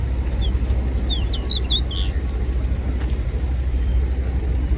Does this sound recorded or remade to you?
recorded